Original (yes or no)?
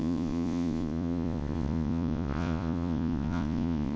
no